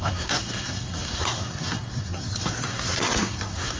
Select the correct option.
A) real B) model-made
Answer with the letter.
B